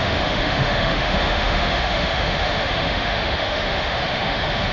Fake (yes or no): yes